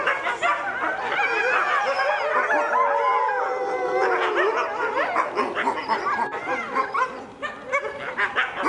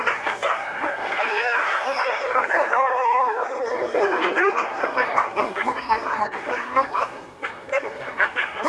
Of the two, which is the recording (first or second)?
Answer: first